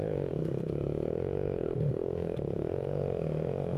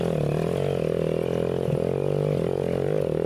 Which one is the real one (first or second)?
second